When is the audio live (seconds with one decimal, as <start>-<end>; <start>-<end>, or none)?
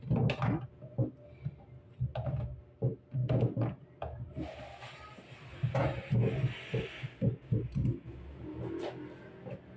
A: 0.0-9.8